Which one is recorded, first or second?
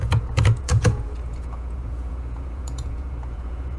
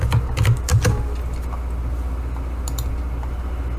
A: second